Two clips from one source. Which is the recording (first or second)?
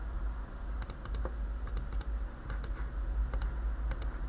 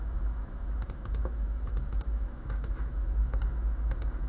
first